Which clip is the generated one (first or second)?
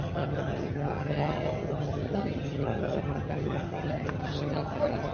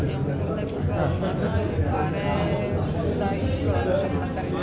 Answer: first